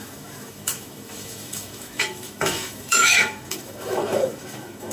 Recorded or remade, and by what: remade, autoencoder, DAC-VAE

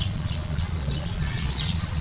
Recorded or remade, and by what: remade, vocoder, Vocos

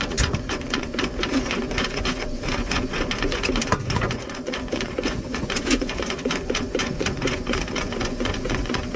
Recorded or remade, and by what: remade, vocoder, Vocos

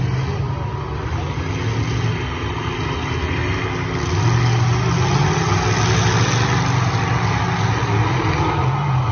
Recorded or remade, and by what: recorded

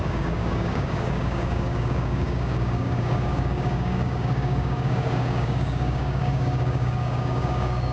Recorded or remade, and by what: remade, codec, DAC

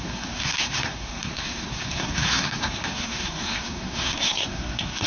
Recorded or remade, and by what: remade, codec, SNAC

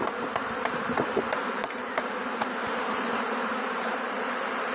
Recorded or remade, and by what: remade, vocoder, BigVGAN v2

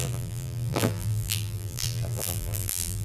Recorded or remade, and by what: remade, vocoder, BigVGAN v2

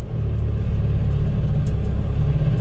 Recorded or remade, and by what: recorded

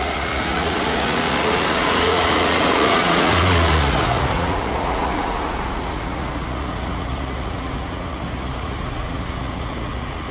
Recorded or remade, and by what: remade, vocoder, Vocos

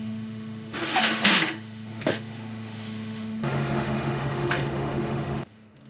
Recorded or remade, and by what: remade, autoencoder, DAC-VAE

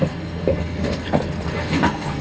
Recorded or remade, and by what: remade, codec, SNAC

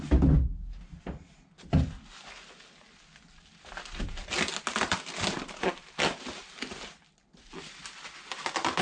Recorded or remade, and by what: recorded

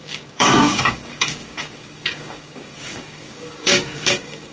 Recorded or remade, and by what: remade, codec, DAC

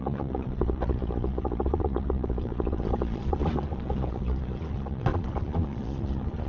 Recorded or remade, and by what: remade, vocoder, Vocos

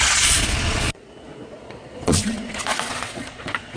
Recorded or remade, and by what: remade, vocoder, Vocos